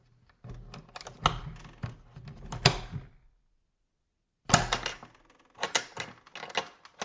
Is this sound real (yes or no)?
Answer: yes